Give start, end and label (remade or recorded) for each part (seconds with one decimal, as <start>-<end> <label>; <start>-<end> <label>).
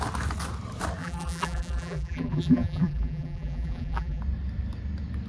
0.0-1.0 recorded; 1.0-4.2 remade; 4.2-5.3 recorded